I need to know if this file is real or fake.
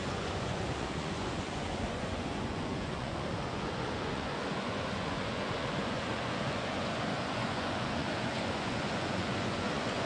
fake